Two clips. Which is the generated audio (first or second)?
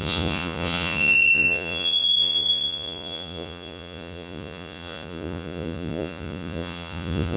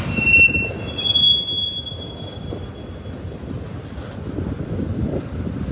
first